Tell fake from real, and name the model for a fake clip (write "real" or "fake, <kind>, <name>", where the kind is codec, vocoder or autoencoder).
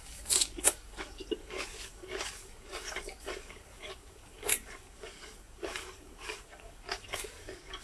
fake, codec, DAC